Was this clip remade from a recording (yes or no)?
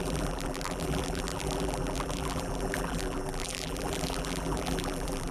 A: yes